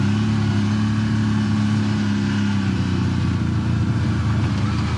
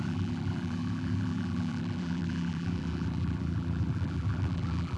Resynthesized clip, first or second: second